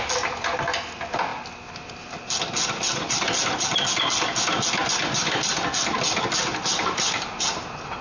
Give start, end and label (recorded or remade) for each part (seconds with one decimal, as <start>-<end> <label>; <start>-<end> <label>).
0.0-8.0 recorded